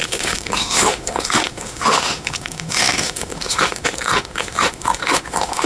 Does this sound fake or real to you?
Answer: fake